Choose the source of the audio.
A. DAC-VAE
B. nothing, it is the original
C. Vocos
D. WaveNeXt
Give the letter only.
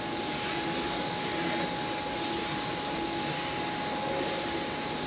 B